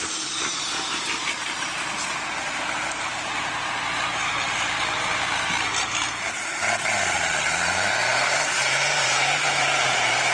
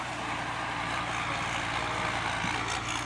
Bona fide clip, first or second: second